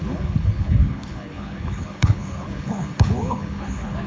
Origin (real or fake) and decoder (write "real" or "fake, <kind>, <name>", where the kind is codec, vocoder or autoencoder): fake, codec, HILCodec